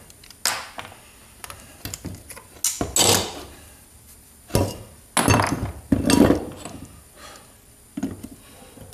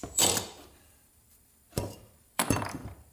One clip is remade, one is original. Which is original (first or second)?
first